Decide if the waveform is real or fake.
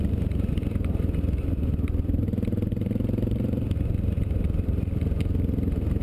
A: fake